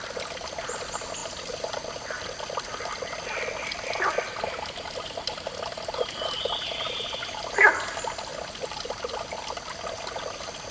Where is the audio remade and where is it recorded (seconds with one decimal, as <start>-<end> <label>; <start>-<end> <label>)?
0.0-10.7 recorded